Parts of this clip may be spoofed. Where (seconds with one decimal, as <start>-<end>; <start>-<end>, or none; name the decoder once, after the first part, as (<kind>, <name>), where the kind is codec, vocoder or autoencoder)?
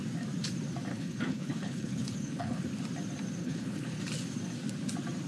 0.9-2.6 (codec, HILCodec); 3.4-4.0